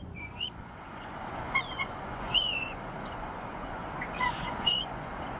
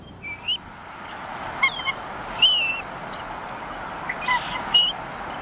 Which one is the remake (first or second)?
first